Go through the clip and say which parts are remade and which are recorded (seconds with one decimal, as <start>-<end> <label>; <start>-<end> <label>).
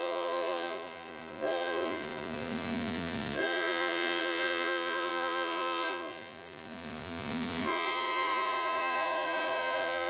0.0-10.1 remade